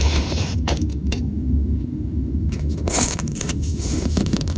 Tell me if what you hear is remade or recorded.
remade